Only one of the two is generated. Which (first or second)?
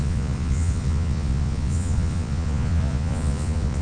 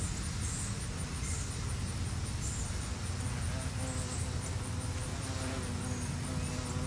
first